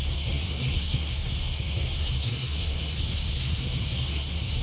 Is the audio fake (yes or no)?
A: yes